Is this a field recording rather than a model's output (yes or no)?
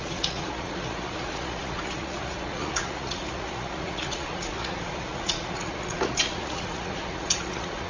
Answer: no